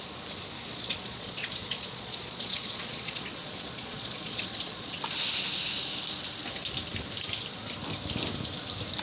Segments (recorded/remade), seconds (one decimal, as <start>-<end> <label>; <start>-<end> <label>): 0.0-0.7 recorded; 0.7-5.0 remade; 5.0-9.0 recorded